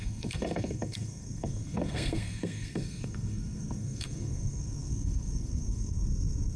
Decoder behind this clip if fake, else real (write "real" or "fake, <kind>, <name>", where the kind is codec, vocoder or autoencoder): fake, codec, SNAC